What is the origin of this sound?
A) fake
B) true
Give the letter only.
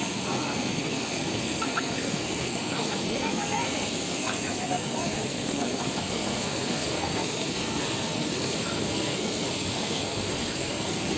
A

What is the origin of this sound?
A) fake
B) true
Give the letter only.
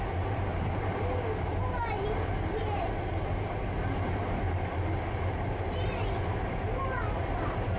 B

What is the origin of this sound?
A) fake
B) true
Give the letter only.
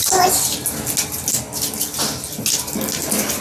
B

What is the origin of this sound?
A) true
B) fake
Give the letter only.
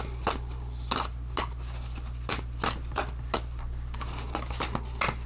A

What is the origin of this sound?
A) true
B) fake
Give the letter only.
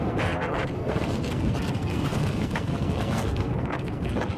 B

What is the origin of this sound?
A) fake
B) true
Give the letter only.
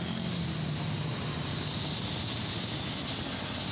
B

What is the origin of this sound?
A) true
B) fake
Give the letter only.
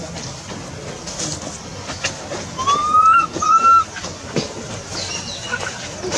A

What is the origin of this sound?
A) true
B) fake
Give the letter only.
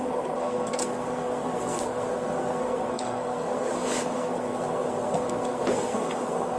B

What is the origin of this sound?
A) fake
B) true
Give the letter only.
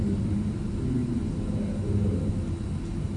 B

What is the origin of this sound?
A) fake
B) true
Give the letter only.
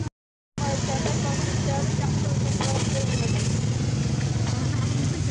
B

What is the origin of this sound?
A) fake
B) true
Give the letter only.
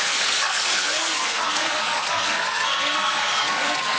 A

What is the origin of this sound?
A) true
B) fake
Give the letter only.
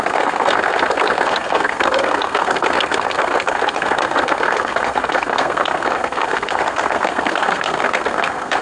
B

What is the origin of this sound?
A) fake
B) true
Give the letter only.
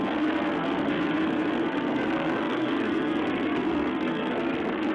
A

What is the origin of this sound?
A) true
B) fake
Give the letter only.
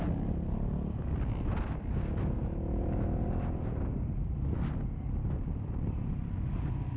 A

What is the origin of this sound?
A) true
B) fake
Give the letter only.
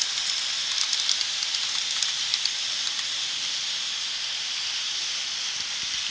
A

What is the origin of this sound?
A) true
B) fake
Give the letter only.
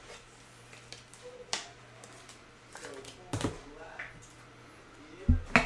A